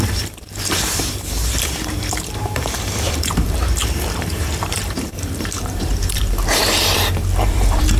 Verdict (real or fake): fake